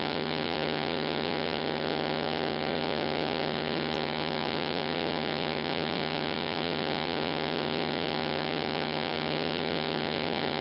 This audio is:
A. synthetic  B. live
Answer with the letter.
A